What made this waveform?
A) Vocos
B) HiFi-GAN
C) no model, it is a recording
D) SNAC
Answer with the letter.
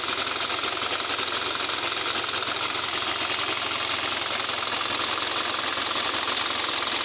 C